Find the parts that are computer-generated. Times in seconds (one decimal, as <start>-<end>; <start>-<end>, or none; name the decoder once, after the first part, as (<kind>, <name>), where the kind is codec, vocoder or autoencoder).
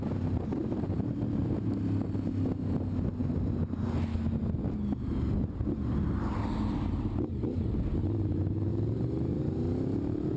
0.6-1.4 (vocoder, BigVGAN v2)